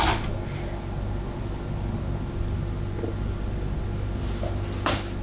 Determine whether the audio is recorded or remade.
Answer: recorded